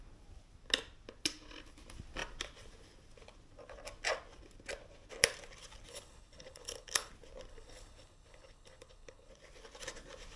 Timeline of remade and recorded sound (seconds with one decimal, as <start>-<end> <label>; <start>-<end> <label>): 0.0-5.9 recorded; 5.9-7.1 remade; 7.1-7.5 recorded; 7.5-9.3 remade; 9.3-10.4 recorded